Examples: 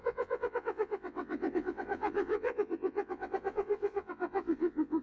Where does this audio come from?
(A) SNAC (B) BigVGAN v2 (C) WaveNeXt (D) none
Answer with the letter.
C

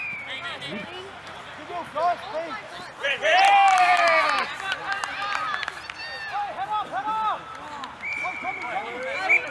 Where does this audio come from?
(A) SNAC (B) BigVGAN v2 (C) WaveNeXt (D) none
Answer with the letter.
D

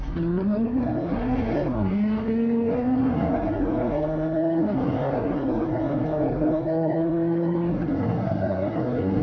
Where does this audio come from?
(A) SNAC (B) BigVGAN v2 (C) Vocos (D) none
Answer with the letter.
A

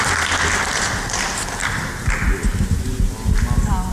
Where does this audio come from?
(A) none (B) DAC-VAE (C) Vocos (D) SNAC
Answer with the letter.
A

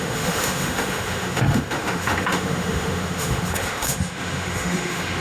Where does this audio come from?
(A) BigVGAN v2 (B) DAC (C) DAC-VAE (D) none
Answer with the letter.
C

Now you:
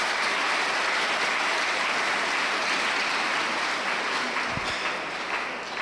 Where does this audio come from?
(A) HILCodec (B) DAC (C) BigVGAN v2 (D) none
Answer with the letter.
D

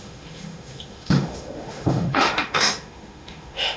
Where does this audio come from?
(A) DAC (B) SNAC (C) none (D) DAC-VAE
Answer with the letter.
D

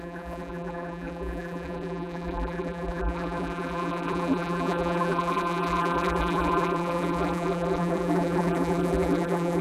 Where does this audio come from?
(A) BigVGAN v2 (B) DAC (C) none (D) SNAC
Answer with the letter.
A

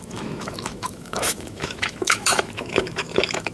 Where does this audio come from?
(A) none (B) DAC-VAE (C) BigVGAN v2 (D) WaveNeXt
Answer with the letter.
B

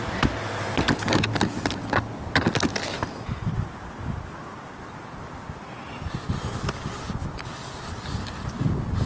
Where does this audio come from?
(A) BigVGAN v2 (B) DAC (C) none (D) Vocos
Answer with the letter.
C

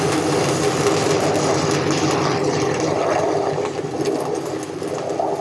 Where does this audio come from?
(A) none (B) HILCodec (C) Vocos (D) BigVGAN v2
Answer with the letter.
A